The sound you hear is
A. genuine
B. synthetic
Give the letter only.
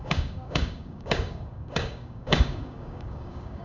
B